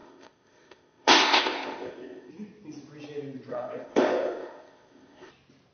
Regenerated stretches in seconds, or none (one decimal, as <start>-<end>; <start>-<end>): 0.0-2.3; 3.5-5.3